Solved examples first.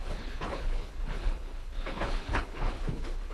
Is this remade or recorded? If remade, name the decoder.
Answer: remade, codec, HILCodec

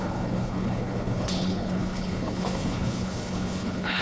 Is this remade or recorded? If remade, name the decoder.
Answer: remade, codec, HILCodec